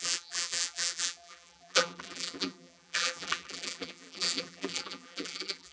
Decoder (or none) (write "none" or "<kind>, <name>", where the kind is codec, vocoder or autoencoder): vocoder, BigVGAN v2